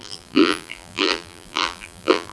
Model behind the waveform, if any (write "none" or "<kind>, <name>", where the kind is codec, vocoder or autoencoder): vocoder, BigVGAN v2